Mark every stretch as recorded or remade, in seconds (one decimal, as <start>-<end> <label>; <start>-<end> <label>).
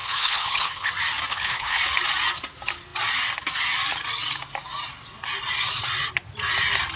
0.0-0.9 remade; 0.9-1.3 recorded; 1.3-1.8 remade; 1.8-7.0 recorded